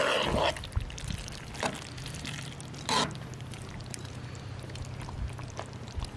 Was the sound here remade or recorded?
recorded